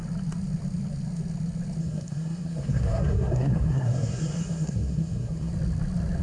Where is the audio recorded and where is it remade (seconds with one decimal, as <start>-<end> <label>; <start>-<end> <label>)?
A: 0.0-1.8 recorded; 1.8-5.5 remade; 5.5-6.2 recorded